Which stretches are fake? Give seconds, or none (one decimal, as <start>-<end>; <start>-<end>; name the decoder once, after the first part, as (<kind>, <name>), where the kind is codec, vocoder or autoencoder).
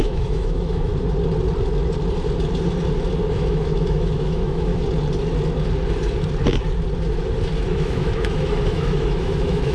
0.0-0.9 (autoencoder, DAC-VAE); 3.3-4.7; 7.7-9.7